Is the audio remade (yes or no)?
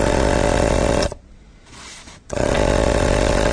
yes